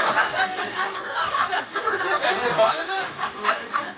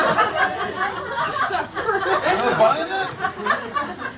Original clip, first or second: second